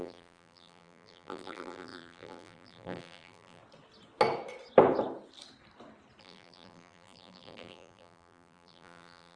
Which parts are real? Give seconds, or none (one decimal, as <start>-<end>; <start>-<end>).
3.6-6.2